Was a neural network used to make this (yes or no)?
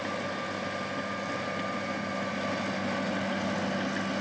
no